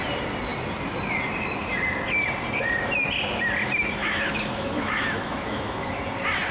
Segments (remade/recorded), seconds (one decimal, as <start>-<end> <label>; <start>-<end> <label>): 0.0-4.0 recorded; 4.0-6.0 remade; 6.0-6.5 recorded